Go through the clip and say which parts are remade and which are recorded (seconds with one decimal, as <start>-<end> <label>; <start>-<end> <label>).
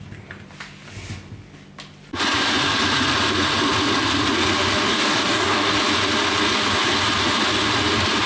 0.0-4.9 recorded; 4.9-5.7 remade; 5.7-8.3 recorded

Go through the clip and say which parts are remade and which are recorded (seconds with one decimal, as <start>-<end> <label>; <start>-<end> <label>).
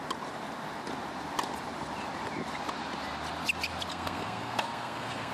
0.0-3.9 recorded; 3.9-5.3 remade